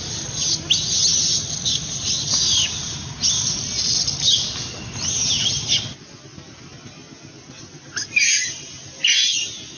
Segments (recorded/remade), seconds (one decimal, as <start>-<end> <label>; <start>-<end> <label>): 0.0-9.8 recorded